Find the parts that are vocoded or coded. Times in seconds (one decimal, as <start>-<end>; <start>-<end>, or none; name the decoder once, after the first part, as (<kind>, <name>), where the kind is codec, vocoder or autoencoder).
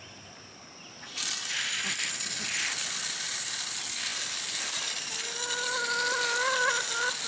none